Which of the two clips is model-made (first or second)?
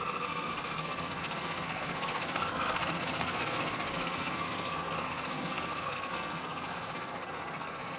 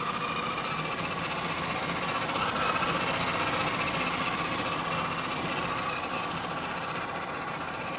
first